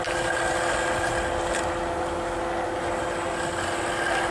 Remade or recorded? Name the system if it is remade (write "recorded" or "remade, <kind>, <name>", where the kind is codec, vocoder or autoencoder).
recorded